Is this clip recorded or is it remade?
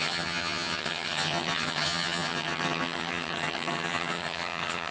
remade